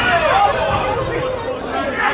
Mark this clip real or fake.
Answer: real